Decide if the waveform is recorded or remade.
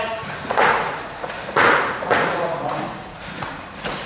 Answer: remade